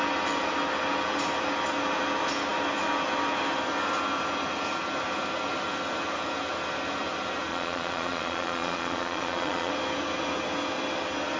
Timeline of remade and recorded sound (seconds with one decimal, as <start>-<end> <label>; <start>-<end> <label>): 0.0-7.5 recorded; 7.5-9.7 remade; 9.7-11.4 recorded